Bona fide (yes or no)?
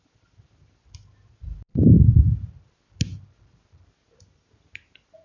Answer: yes